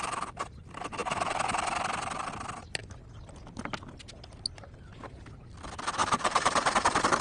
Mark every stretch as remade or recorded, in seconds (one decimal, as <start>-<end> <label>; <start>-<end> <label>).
0.0-6.0 recorded; 6.0-7.2 remade